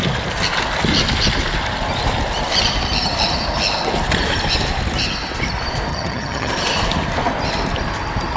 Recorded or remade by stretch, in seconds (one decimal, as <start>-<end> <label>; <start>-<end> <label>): 0.0-5.9 recorded; 5.9-6.5 remade; 6.5-8.4 recorded